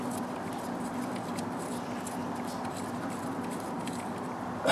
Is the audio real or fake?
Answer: real